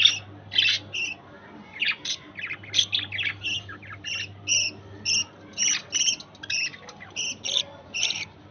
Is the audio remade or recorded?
recorded